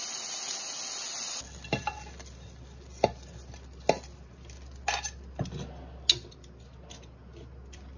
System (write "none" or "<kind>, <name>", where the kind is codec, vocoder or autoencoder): none